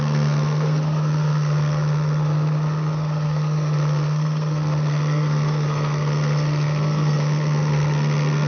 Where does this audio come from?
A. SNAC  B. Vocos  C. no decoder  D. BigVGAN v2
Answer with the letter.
A